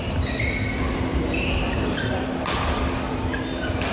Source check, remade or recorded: recorded